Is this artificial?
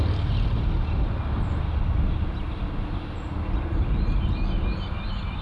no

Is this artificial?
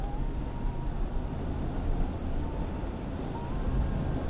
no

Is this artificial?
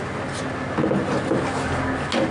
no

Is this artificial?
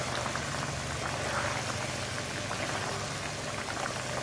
no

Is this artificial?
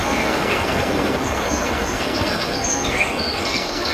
yes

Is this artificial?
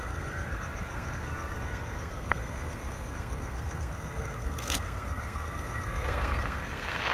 yes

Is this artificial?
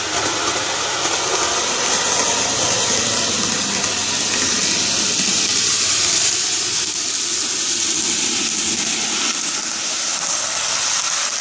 no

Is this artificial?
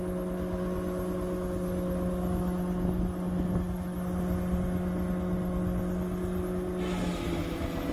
no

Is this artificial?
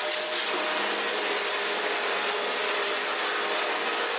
no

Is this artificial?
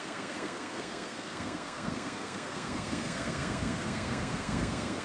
yes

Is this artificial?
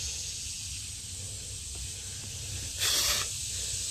no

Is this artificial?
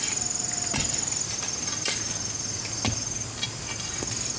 no